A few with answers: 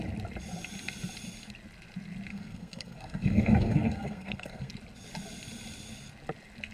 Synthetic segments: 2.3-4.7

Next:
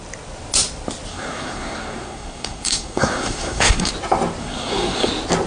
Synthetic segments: 1.1-3.9; 4.4-5.1

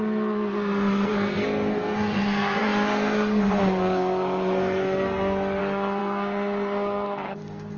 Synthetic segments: 0.0-7.8